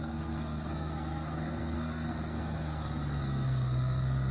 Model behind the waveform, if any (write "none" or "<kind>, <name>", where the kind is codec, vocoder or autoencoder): codec, SNAC